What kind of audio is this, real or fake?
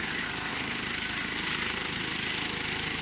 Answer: real